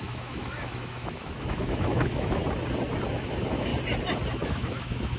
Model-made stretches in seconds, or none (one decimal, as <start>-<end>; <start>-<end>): 0.0-2.4; 3.1-3.7; 4.3-5.2